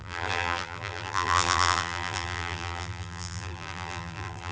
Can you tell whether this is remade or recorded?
remade